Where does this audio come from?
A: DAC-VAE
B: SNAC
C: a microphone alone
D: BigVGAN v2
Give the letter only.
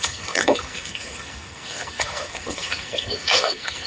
B